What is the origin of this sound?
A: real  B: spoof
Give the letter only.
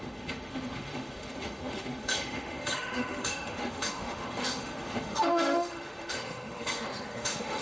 B